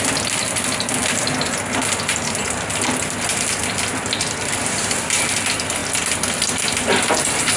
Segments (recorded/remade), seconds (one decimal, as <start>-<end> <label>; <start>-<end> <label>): 0.0-7.6 recorded